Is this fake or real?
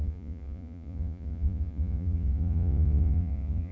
fake